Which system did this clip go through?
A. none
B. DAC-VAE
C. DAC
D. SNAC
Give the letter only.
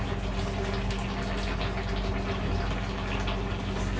A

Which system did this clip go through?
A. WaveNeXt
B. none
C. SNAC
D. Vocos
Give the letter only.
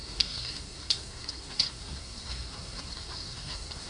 C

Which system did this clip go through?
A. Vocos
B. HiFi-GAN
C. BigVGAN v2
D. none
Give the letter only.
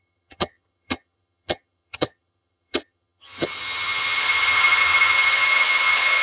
B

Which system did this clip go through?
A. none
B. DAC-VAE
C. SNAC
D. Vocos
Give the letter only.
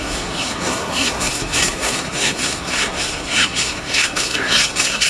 C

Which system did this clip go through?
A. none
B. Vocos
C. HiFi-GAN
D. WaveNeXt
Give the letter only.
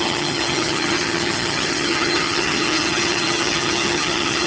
C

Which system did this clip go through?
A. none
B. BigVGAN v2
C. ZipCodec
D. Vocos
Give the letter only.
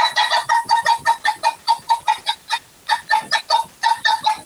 A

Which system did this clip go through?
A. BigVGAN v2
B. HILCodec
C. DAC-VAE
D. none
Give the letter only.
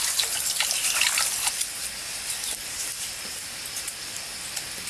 D